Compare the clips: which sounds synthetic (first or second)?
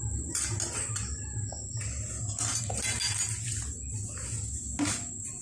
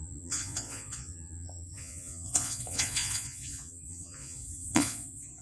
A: second